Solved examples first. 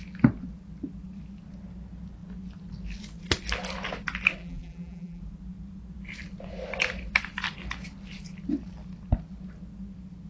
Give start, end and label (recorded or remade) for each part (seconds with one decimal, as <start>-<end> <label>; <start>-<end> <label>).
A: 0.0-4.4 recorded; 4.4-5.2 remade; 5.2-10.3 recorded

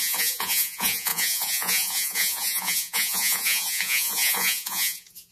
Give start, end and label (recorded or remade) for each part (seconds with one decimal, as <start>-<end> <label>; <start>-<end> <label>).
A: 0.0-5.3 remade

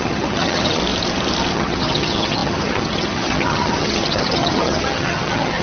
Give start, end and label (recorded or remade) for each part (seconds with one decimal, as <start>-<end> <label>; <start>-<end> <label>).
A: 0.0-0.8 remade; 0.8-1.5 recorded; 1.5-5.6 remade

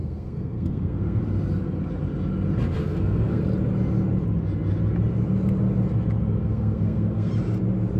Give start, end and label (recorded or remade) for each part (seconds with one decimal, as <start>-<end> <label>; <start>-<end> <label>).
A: 0.0-1.2 remade; 1.2-2.8 recorded; 2.8-3.4 remade; 3.4-6.4 recorded; 6.4-7.3 remade; 7.3-8.0 recorded

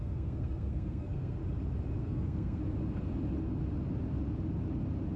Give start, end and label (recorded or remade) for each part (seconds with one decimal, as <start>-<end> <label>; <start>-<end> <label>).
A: 0.0-1.4 remade; 1.4-2.0 recorded; 2.0-2.6 remade; 2.6-5.2 recorded